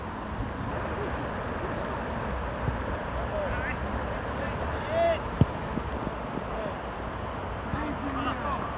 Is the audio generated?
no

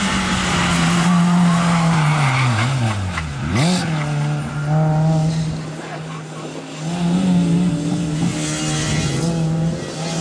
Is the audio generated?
no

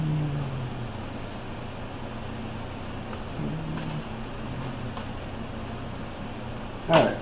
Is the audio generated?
no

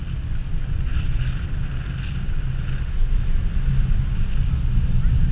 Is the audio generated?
no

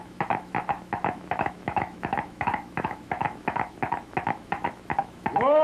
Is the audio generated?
yes